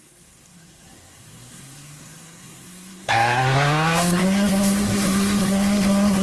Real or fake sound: fake